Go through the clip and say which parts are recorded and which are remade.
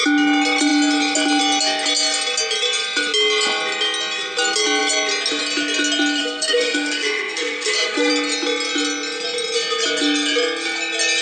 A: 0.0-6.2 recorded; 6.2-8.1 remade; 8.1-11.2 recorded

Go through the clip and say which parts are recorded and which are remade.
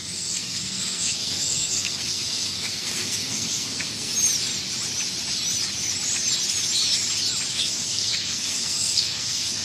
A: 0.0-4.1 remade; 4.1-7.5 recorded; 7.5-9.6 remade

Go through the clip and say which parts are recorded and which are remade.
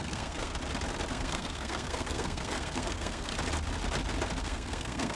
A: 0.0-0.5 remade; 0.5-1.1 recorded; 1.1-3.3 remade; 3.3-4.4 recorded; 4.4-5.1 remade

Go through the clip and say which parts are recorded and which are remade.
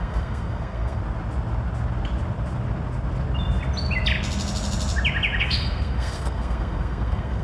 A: 0.0-1.0 remade; 1.0-5.4 recorded; 5.4-7.4 remade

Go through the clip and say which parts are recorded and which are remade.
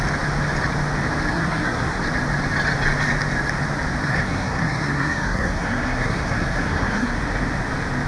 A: 0.0-1.3 recorded; 1.3-2.0 remade; 2.0-4.0 recorded; 4.0-7.2 remade; 7.2-8.1 recorded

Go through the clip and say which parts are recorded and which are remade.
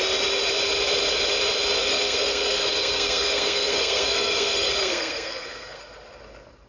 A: 0.0-1.8 recorded; 1.8-5.8 remade; 5.8-6.7 recorded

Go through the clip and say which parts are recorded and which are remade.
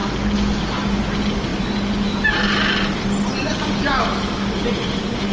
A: 0.0-5.3 recorded